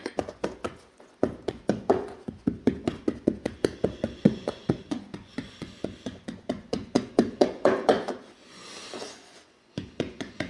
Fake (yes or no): yes